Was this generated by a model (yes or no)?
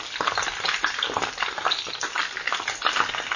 no